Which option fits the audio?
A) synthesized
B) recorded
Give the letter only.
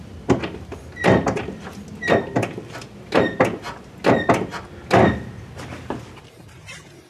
B